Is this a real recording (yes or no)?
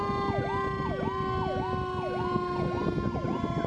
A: yes